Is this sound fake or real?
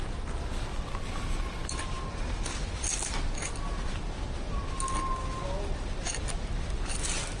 real